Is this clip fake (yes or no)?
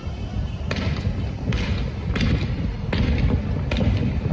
no